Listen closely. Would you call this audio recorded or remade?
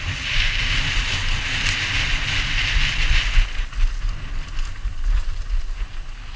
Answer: recorded